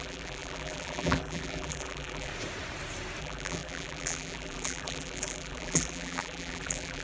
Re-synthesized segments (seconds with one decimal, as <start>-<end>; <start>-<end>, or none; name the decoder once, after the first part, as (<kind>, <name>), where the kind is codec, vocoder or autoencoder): 0.0-2.3 (vocoder, BigVGAN v2); 3.2-7.0